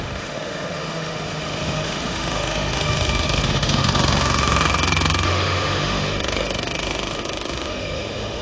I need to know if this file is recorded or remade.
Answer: remade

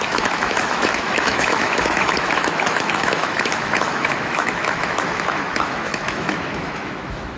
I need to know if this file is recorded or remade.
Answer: remade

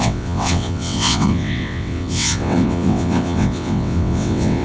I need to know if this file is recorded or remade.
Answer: remade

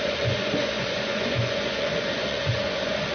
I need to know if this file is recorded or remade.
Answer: remade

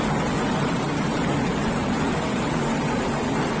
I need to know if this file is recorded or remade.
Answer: recorded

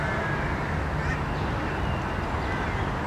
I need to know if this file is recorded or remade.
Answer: recorded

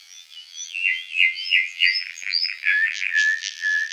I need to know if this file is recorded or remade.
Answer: remade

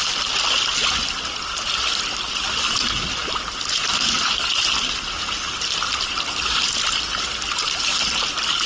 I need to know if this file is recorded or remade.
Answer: recorded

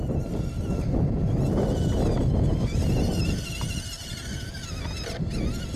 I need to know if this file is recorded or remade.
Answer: recorded